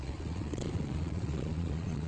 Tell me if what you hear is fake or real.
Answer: fake